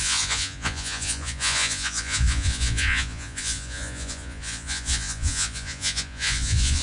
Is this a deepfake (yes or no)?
yes